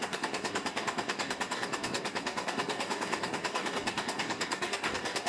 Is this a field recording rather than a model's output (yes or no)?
no